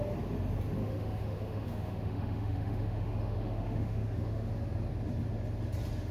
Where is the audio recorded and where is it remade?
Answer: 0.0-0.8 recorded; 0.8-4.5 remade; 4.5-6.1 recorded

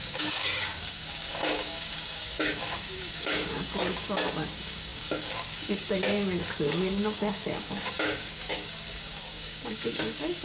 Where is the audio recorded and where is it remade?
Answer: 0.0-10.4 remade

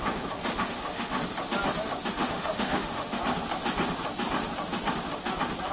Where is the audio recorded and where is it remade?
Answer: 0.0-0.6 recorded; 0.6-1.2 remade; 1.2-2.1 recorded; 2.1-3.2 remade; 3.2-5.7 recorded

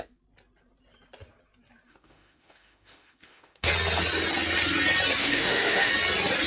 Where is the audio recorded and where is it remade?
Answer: 0.0-1.9 recorded; 1.9-3.7 remade; 3.7-5.2 recorded; 5.2-5.9 remade; 5.9-6.5 recorded